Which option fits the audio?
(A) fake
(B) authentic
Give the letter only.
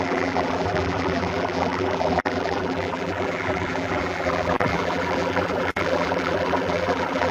A